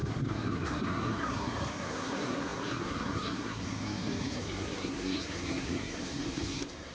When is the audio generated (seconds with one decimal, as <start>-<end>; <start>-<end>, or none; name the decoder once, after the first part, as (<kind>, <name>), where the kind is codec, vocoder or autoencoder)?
0.0-6.9 (codec, SNAC)